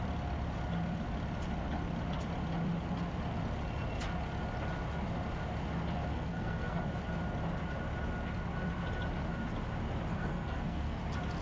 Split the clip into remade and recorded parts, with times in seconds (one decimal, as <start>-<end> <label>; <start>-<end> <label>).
0.0-6.1 recorded; 6.1-6.8 remade; 6.8-10.1 recorded; 10.1-11.0 remade; 11.0-11.4 recorded